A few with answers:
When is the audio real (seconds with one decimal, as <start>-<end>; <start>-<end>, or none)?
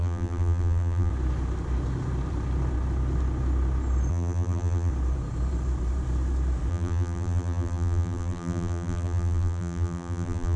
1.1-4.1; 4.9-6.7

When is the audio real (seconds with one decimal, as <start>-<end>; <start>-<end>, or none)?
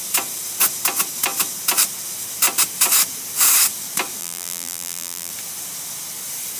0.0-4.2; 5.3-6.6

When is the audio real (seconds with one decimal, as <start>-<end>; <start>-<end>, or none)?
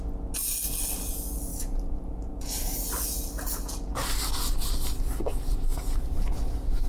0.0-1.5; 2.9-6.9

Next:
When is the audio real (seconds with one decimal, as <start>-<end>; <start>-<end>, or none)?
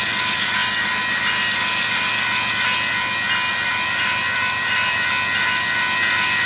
0.0-3.5; 5.1-6.5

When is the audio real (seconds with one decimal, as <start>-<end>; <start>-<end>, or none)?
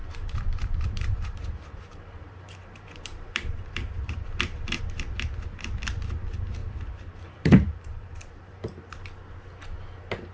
4.8-6.6; 8.8-10.3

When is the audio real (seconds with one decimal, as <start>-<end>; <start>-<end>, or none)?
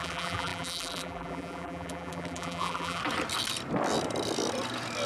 3.0-5.1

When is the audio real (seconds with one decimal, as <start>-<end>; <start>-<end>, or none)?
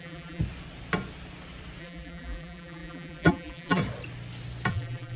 0.4-1.8; 3.8-4.7